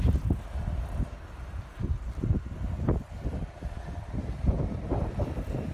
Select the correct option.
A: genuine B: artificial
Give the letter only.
B